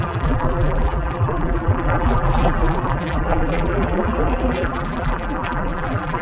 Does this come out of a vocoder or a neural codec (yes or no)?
yes